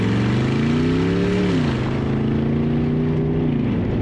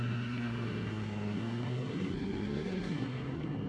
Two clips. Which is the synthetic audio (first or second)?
second